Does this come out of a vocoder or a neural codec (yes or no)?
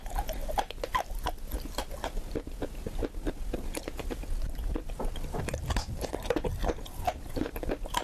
no